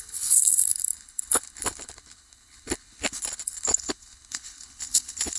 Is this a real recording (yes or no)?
no